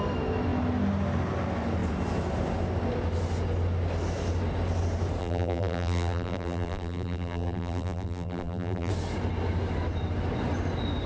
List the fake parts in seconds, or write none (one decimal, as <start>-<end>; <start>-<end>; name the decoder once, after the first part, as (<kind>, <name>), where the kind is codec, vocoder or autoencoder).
5.2-8.9 (vocoder, BigVGAN v2)